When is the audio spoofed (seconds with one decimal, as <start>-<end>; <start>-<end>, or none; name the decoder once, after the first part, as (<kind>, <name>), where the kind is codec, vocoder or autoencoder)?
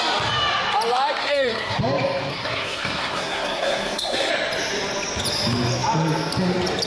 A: 1.2-1.8 (codec, SNAC); 2.3-4.3